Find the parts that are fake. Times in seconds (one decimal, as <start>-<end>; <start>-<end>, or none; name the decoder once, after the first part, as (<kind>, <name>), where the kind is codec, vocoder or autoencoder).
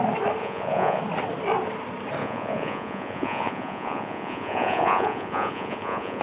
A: 0.4-1.0 (vocoder, Vocos); 2.2-6.2